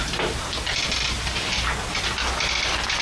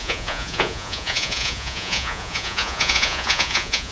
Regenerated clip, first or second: second